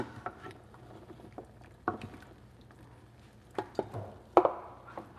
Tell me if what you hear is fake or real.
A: real